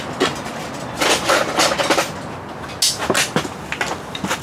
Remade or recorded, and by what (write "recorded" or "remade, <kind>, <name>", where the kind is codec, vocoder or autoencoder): recorded